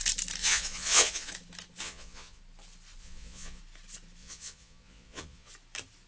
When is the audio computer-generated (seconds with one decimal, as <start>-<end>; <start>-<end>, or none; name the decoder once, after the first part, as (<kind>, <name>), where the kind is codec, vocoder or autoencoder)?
0.4-1.3 (vocoder, Vocos); 1.8-2.4; 3.0-3.6; 4.2-5.5